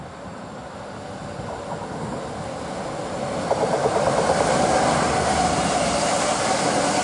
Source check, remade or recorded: recorded